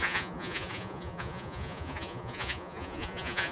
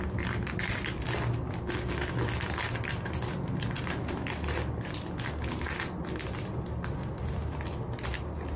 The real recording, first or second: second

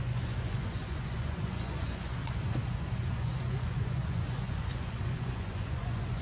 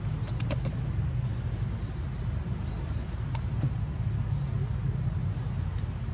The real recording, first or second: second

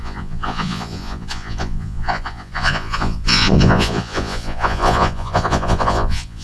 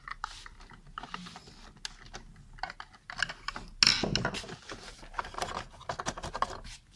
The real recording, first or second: second